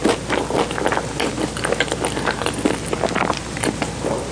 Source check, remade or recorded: recorded